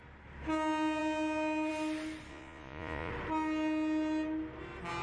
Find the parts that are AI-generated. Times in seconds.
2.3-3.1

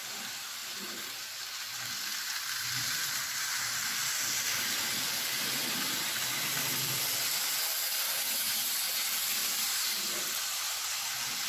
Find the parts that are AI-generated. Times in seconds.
0.6-1.4; 4.0-7.6; 9.4-10.0

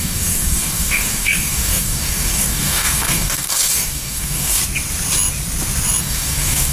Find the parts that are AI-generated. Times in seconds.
0.0-4.6; 6.0-6.7

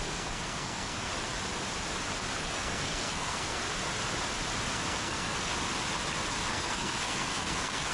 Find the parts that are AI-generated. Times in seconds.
0.0-1.1; 2.4-3.6; 4.7-5.5; 6.5-7.9

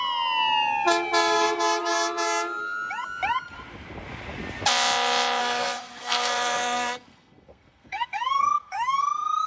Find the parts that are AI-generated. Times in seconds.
5.4-9.5